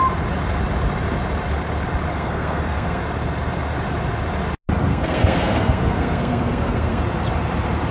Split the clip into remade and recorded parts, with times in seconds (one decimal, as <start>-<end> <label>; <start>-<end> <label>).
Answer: 0.0-2.1 recorded; 2.1-3.0 remade; 3.0-4.9 recorded; 4.9-7.0 remade; 7.0-7.9 recorded